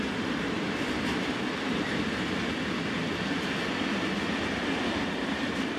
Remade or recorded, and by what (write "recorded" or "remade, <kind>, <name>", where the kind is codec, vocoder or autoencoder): recorded